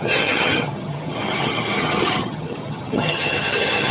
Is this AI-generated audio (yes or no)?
yes